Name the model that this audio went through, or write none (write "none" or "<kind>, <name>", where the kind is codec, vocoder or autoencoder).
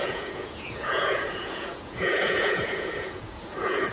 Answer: vocoder, Vocos